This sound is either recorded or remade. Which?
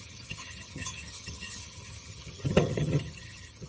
remade